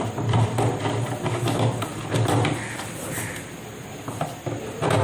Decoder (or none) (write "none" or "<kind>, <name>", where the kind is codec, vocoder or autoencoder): none